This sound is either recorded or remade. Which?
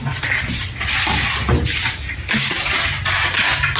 recorded